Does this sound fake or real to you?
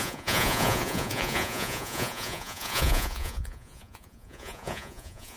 fake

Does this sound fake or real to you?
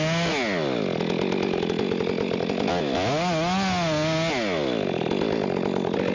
real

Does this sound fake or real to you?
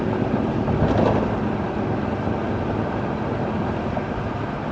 real